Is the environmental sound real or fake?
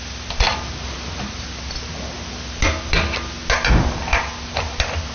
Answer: real